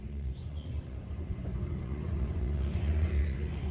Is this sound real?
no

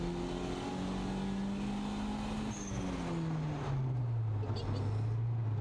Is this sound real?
yes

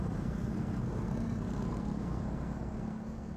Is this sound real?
no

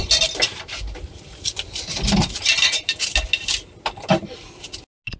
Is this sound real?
yes